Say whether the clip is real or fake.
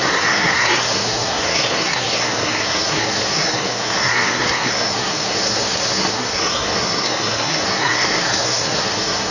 fake